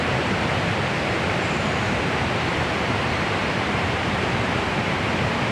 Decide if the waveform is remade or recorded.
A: remade